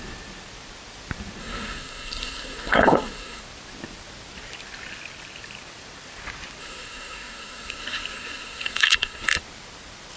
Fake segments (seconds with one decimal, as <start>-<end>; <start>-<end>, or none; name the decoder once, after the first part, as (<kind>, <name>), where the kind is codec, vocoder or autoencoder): 1.4-3.4 (codec, SNAC); 6.6-9.4